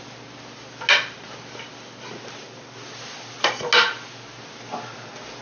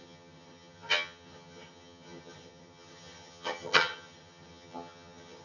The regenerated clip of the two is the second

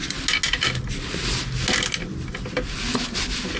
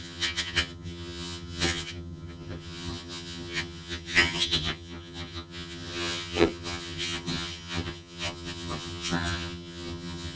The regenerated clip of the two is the second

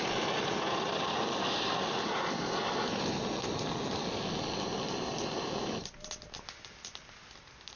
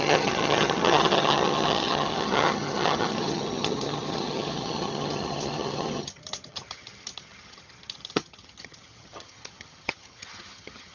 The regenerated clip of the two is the second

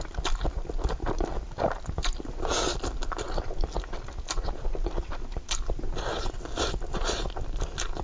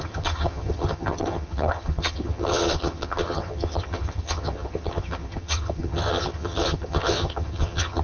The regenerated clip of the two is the second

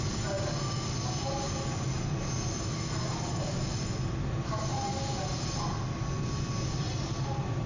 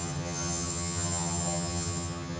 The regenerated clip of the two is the second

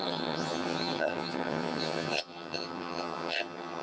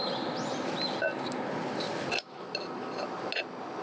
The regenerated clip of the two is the first